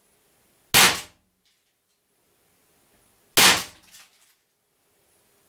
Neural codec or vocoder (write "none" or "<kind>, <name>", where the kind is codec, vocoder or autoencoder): none